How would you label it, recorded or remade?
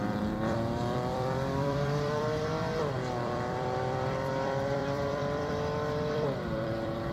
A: remade